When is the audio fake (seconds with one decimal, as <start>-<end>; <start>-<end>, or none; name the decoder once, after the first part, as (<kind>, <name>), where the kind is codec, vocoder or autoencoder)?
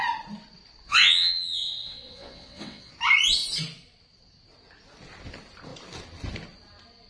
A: 0.9-2.9 (vocoder, WaveNeXt)